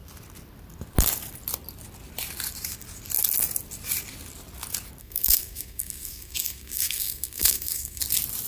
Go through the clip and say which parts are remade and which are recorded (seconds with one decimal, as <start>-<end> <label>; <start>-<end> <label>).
0.0-5.0 recorded; 5.0-8.0 remade; 8.0-8.5 recorded